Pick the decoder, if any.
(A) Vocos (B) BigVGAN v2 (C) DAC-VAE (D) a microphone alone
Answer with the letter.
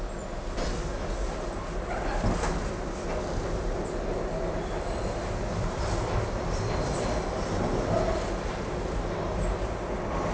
D